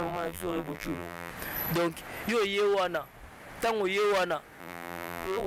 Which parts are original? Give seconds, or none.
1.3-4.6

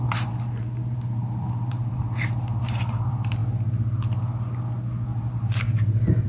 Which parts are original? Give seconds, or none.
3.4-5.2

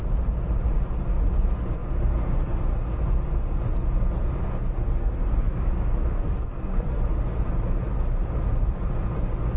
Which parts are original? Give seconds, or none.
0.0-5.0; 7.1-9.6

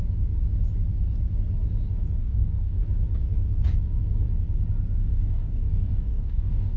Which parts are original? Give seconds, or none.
0.0-2.2; 2.8-5.0